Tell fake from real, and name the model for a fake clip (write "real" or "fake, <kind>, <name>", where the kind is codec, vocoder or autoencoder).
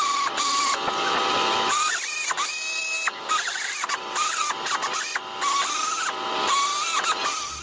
real